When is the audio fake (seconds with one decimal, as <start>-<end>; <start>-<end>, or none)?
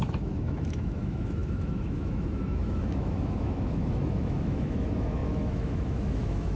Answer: 0.0-6.6